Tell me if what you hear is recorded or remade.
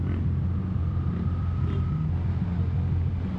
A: recorded